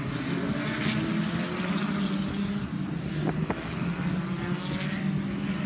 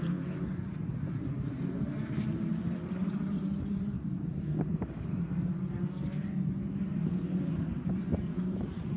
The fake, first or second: second